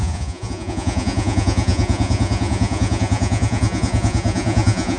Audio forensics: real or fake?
fake